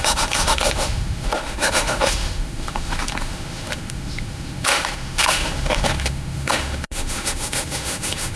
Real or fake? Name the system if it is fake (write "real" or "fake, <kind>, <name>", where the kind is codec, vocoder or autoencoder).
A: fake, autoencoder, DAC-VAE